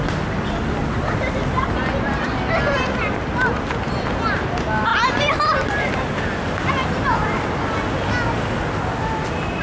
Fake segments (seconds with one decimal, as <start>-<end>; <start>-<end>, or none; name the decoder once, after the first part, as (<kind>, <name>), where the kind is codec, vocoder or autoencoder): none